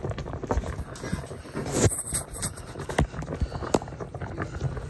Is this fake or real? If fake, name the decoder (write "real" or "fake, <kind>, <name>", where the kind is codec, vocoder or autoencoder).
real